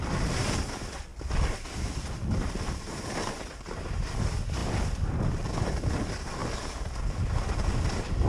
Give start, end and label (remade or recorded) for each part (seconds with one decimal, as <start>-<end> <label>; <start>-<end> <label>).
0.0-8.3 recorded